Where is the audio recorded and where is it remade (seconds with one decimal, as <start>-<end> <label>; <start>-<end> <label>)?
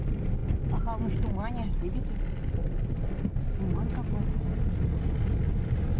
0.0-6.0 recorded